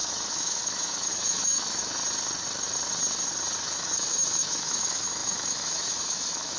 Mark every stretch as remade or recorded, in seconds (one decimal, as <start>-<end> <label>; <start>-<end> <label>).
0.0-2.0 remade; 2.0-3.6 recorded; 3.6-6.6 remade